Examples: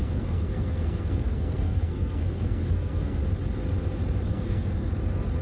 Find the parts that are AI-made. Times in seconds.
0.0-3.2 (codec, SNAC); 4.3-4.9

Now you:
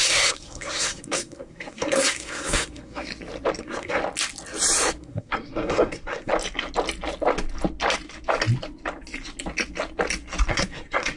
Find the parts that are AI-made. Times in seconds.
0.0-3.1 (codec, SNAC); 3.6-4.0; 5.0-6.3; 10.5-11.2